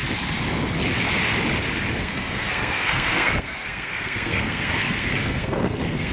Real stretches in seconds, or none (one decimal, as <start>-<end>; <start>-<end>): 0.0-2.0